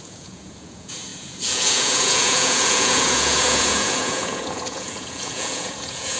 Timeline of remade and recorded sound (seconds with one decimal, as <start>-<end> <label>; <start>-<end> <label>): 0.0-6.2 remade